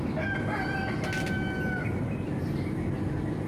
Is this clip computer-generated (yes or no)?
no